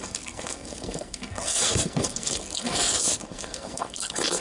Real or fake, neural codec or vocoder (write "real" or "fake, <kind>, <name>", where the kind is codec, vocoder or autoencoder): fake, codec, SNAC